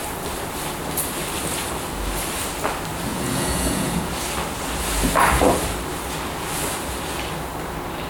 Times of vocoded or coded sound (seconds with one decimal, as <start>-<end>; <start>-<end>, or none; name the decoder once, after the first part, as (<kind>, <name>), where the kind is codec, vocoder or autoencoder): 3.1-4.1 (vocoder, Vocos)